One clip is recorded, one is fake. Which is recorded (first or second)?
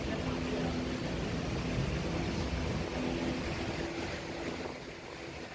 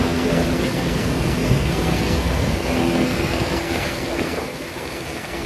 first